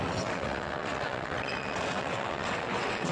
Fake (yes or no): yes